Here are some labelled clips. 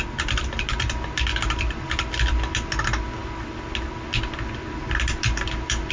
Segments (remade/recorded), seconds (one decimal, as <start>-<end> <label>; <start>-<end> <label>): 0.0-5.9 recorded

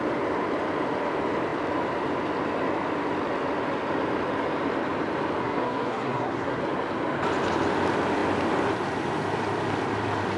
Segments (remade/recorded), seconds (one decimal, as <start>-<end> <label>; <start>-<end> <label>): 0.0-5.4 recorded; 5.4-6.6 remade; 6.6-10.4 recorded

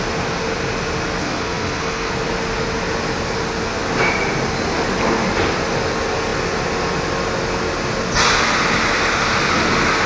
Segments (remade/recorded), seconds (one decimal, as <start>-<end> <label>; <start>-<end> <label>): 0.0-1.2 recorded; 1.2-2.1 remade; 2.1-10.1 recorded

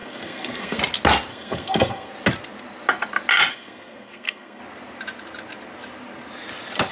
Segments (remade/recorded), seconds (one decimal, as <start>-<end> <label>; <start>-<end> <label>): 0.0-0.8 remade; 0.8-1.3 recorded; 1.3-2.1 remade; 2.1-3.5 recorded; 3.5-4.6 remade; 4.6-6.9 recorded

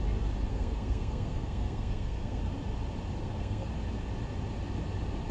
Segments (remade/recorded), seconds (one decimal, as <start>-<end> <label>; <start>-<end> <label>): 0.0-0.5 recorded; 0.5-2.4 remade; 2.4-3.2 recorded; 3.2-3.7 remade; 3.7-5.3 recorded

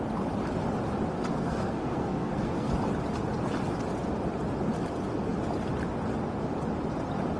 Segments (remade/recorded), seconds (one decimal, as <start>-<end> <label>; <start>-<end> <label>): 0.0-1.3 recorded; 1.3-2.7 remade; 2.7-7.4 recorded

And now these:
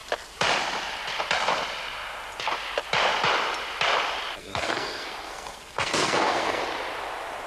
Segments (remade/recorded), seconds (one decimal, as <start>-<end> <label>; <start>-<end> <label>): 0.0-4.4 recorded; 4.4-6.6 remade; 6.6-7.5 recorded

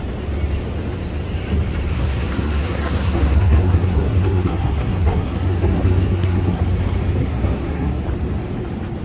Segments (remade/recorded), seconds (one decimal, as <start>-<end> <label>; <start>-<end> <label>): 0.0-1.9 recorded; 1.9-6.6 remade; 6.6-7.2 recorded; 7.2-8.0 remade; 8.0-9.0 recorded